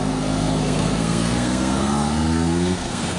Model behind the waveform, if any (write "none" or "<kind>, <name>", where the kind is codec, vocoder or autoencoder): codec, SNAC